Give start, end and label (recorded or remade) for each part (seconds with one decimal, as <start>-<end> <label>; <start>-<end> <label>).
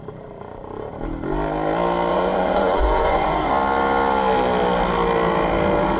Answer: 0.0-2.1 recorded; 2.1-3.5 remade; 3.5-6.0 recorded